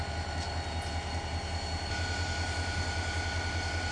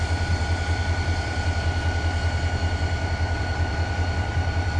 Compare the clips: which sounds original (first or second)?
first